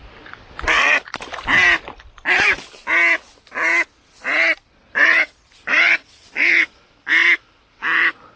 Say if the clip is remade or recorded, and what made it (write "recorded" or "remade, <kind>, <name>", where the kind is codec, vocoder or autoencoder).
recorded